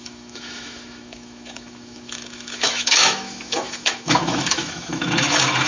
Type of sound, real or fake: fake